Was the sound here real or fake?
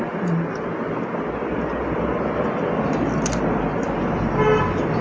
real